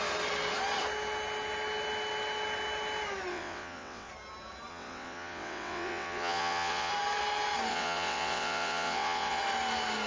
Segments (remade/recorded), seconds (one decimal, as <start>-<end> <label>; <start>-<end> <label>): 0.0-3.3 recorded; 3.3-4.1 remade; 4.1-4.7 recorded; 4.7-6.9 remade; 6.9-7.7 recorded; 7.7-9.4 remade; 9.4-10.1 recorded